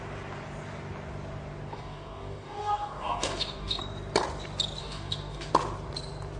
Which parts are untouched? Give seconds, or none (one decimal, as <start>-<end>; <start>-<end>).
0.0-1.7; 3.8-4.8; 5.5-6.4